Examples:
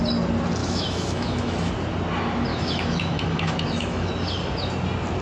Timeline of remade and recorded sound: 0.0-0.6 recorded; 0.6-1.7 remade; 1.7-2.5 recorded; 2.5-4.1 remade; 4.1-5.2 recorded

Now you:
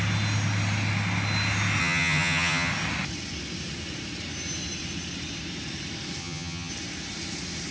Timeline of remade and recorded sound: 0.0-1.8 recorded; 1.8-2.7 remade; 2.7-6.2 recorded; 6.2-6.7 remade; 6.7-7.7 recorded

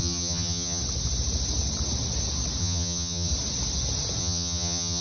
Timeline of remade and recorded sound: 0.0-0.8 remade; 0.8-2.6 recorded; 2.6-3.3 remade; 3.3-4.2 recorded; 4.2-5.0 remade

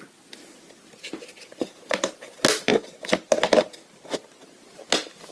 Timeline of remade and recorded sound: 0.0-5.3 recorded